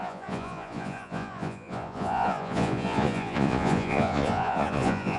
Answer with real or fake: fake